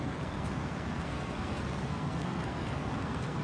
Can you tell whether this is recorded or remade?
remade